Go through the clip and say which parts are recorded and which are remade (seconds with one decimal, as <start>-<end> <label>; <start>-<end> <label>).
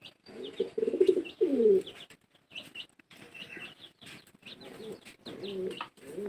0.0-3.4 recorded; 3.4-4.9 remade; 4.9-6.3 recorded